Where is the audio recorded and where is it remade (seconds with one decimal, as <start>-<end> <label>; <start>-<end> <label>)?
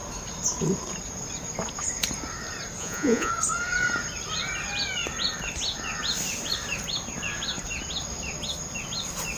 0.0-2.8 recorded; 2.8-3.3 remade; 3.3-9.4 recorded